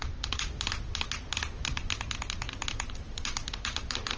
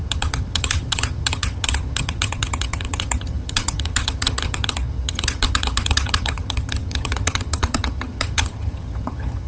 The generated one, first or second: second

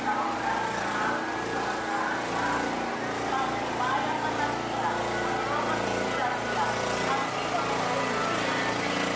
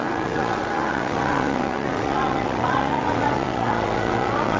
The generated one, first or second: second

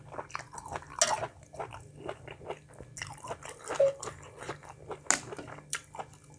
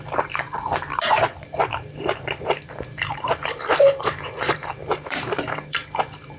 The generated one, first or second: second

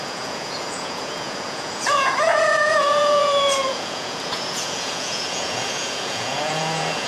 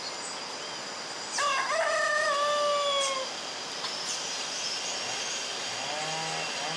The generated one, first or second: first